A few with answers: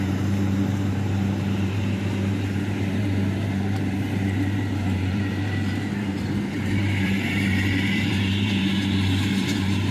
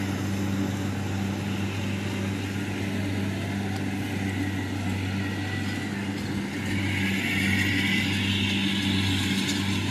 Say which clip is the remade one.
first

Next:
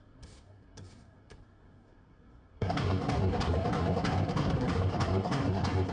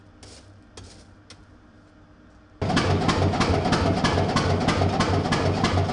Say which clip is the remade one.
first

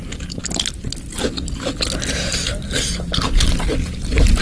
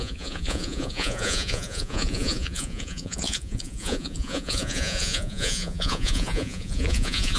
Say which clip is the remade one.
second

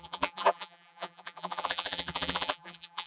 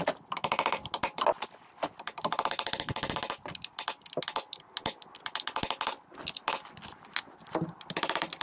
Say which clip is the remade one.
first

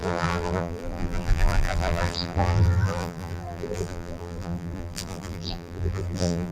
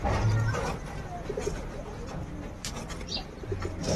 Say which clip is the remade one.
first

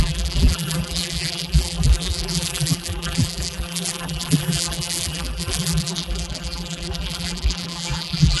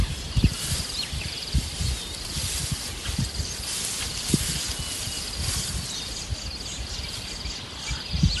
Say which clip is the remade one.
first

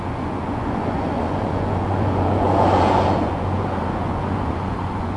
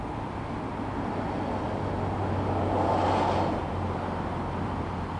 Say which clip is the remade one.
first